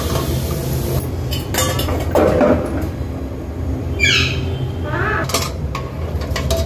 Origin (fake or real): real